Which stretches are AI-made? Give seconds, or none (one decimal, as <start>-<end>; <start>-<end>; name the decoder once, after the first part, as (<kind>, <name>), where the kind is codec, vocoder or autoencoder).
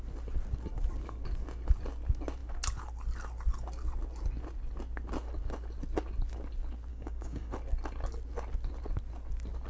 6.9-7.5 (codec, DAC)